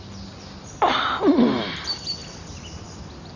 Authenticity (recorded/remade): remade